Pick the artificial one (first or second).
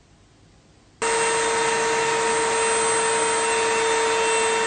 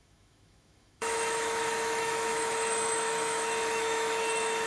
second